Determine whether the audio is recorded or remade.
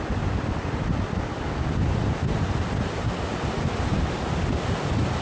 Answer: recorded